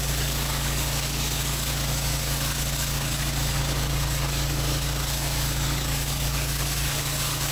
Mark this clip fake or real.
fake